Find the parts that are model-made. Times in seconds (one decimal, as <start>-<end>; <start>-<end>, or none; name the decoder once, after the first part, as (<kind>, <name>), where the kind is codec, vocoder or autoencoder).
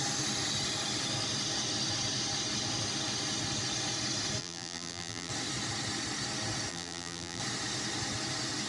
4.4-5.3 (vocoder, BigVGAN v2); 6.7-7.4